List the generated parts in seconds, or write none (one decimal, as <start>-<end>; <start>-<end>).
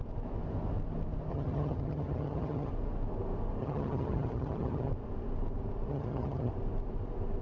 1.3-2.7; 3.6-4.9; 5.9-6.5